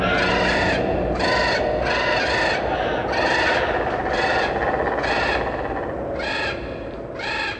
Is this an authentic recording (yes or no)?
yes